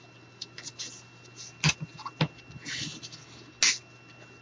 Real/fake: real